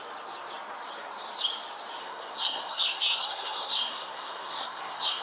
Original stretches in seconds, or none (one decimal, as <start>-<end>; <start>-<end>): 0.0-2.0